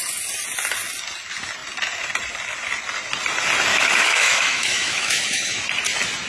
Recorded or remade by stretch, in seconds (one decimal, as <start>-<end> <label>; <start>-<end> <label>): 0.0-3.7 recorded; 3.7-5.6 remade; 5.6-6.3 recorded